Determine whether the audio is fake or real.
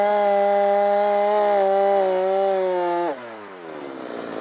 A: real